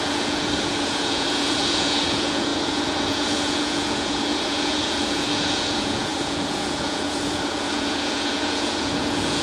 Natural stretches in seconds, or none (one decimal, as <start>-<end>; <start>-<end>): none